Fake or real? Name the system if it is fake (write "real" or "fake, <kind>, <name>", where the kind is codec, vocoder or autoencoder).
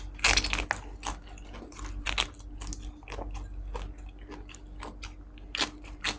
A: real